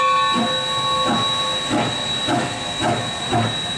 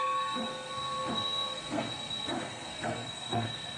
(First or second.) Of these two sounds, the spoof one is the second